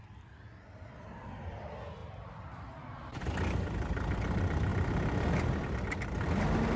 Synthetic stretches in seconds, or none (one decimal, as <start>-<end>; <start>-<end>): 0.0-2.0; 2.7-4.7; 5.4-6.8